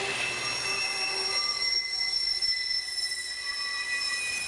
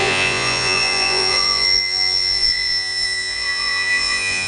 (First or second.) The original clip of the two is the first